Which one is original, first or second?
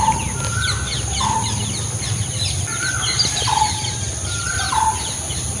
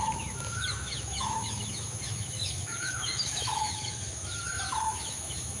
first